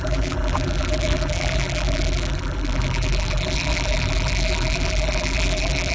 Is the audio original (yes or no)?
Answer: no